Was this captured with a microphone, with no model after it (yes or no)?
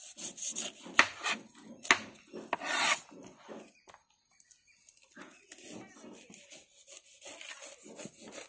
yes